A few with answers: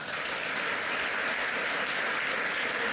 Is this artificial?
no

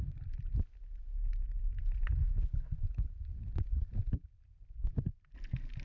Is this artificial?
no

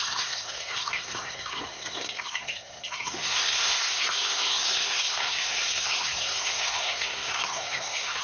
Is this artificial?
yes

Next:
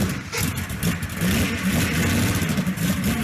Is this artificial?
no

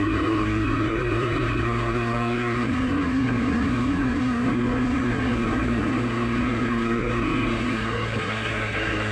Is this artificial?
yes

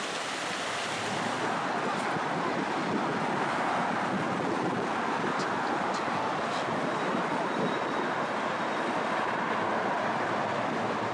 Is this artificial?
no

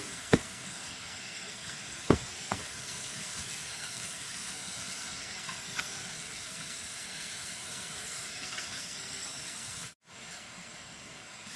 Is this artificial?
yes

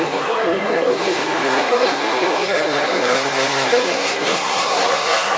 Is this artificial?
yes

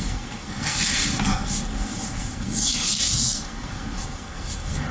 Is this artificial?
yes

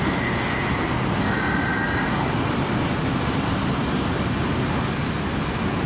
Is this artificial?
no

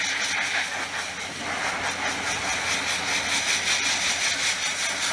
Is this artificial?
no